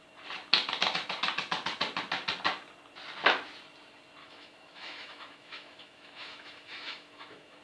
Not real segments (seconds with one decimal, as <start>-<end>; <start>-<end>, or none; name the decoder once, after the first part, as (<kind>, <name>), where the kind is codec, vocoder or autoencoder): 4.2-7.6 (autoencoder, DAC-VAE)